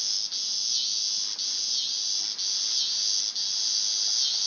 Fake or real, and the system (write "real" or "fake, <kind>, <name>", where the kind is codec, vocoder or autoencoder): real